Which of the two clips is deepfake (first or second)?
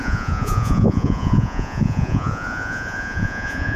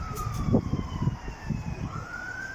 first